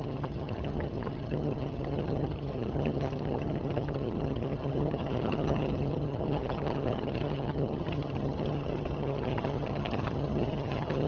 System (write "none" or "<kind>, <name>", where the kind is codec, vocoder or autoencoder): vocoder, HiFi-GAN